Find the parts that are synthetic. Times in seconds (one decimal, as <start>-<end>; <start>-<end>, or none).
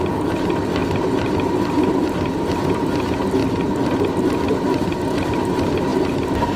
5.9-6.6